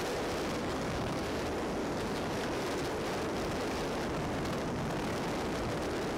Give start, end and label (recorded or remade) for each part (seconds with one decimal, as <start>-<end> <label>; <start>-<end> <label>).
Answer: 0.0-0.6 recorded; 0.6-1.4 remade; 1.4-1.8 recorded; 1.8-2.6 remade; 2.6-6.2 recorded